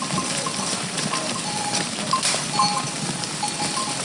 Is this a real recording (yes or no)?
yes